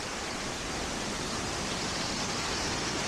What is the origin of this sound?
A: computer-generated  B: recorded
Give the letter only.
A